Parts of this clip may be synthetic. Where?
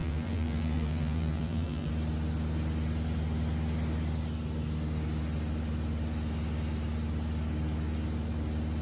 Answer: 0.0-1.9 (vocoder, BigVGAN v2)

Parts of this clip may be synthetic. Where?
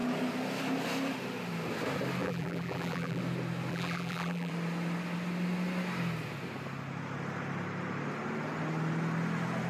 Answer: 2.2-3.2 (vocoder, BigVGAN v2); 3.7-4.5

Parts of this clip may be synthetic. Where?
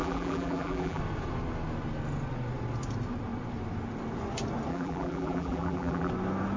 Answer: 0.0-1.0 (vocoder, BigVGAN v2); 4.7-6.1